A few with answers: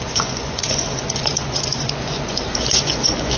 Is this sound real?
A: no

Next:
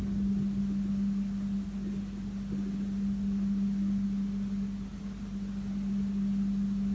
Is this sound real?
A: yes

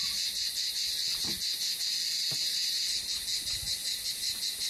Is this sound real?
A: yes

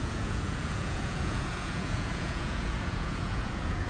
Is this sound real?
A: no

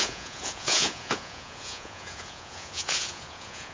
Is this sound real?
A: no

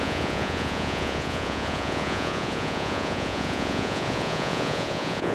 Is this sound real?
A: no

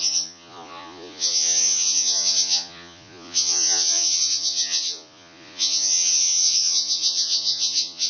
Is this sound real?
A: no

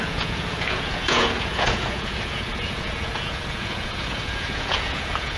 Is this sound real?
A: no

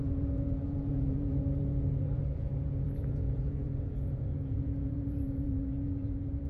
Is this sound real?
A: no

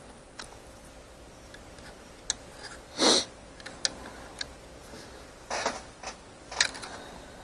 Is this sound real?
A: yes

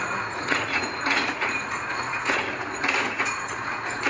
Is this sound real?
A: no